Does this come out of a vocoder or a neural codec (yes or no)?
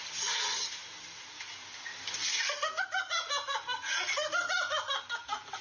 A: no